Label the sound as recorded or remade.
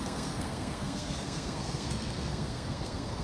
remade